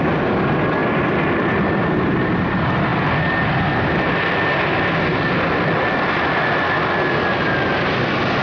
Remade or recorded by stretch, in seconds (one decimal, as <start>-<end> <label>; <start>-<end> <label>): 0.0-8.4 recorded

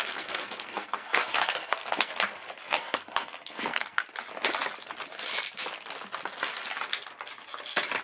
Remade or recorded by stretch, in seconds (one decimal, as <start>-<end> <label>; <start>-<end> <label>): 0.0-2.1 remade; 2.1-2.6 recorded; 2.6-4.0 remade; 4.0-8.0 recorded

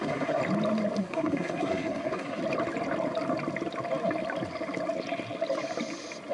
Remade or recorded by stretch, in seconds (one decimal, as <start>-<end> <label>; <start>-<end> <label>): 0.0-0.4 remade; 0.4-1.0 recorded; 1.0-2.4 remade; 2.4-6.3 recorded

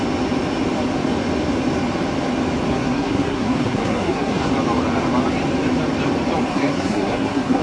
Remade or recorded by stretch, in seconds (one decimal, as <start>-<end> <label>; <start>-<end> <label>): 0.0-2.7 recorded; 2.7-4.5 remade; 4.5-6.5 recorded; 6.5-7.6 remade